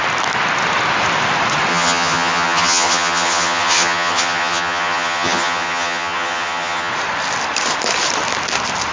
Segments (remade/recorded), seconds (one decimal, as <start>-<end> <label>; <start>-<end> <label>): 0.0-1.7 recorded; 1.7-6.9 remade; 6.9-8.9 recorded